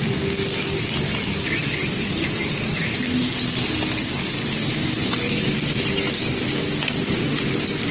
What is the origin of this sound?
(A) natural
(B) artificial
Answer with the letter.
A